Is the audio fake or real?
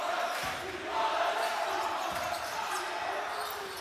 real